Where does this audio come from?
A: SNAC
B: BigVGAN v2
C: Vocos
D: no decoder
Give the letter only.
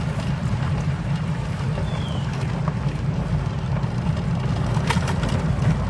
D